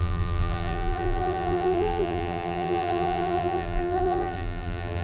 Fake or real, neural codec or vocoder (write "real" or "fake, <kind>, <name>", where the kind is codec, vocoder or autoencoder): fake, vocoder, BigVGAN v2